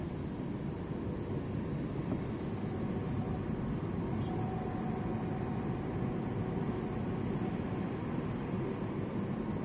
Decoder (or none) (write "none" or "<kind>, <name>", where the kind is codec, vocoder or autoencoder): none